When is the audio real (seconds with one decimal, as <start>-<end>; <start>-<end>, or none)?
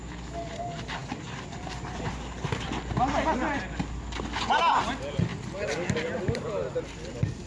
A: 0.0-7.5